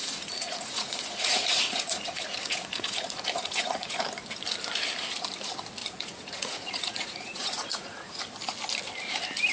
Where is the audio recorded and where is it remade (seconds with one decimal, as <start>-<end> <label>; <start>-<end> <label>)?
0.0-4.0 remade; 4.0-5.8 recorded; 5.8-8.1 remade; 8.1-9.5 recorded